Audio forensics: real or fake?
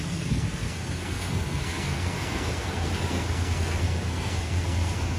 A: fake